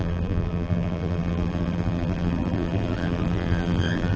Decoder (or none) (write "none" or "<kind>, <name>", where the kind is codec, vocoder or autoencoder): vocoder, BigVGAN v2